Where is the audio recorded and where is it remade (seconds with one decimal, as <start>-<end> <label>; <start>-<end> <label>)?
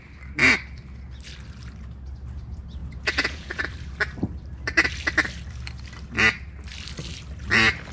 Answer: 0.0-2.8 recorded; 2.8-3.6 remade; 3.6-7.9 recorded